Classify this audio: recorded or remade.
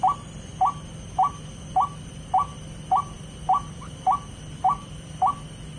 recorded